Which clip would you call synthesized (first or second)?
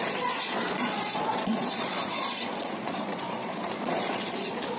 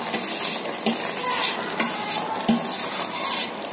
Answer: first